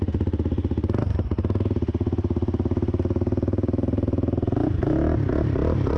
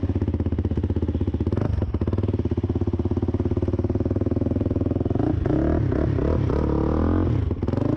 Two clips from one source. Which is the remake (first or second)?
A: first